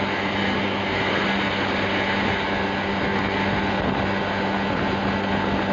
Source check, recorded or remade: recorded